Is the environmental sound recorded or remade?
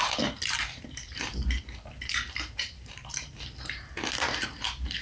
remade